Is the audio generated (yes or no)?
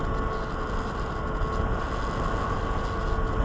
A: no